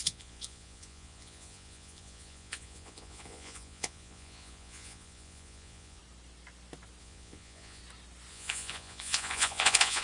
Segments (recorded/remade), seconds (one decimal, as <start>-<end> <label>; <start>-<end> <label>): 0.0-6.0 remade; 6.0-7.0 recorded; 7.0-7.8 remade; 7.8-8.3 recorded; 8.3-10.0 remade